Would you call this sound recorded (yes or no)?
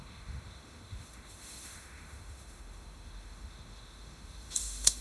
no